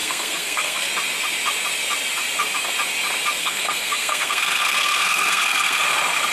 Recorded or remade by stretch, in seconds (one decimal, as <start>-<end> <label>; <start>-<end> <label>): 0.0-0.9 remade; 0.9-3.4 recorded; 3.4-5.8 remade; 5.8-6.3 recorded